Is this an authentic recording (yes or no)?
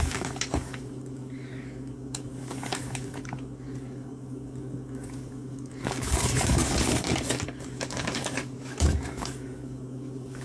no